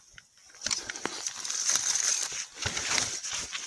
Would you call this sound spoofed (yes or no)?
yes